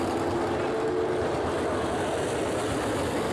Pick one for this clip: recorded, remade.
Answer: recorded